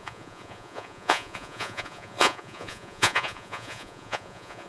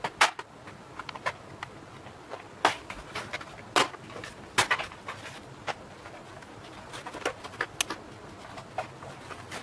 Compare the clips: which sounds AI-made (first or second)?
first